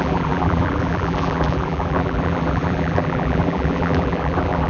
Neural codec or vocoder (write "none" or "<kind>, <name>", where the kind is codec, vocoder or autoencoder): vocoder, BigVGAN v2